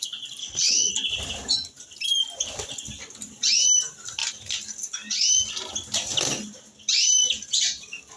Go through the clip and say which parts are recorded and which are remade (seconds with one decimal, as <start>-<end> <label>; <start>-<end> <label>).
0.0-0.4 recorded; 0.4-0.9 remade; 0.9-8.2 recorded